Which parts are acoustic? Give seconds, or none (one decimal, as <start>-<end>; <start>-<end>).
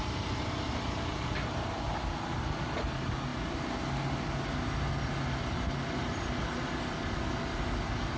0.0-8.2